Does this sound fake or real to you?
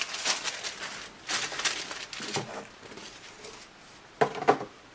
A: real